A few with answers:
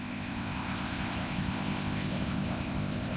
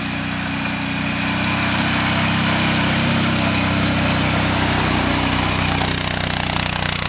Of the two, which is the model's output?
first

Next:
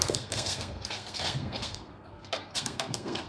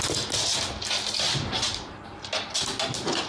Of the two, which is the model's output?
first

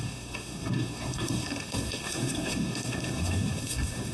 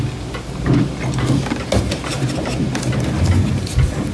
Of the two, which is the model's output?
first